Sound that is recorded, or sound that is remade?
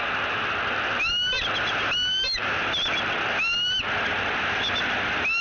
recorded